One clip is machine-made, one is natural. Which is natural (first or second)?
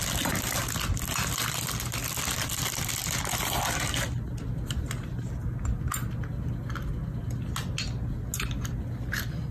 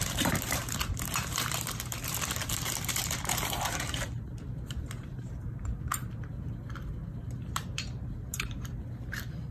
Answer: first